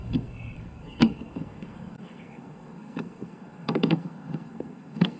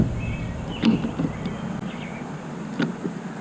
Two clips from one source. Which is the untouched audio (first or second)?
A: second